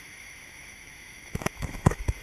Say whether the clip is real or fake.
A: fake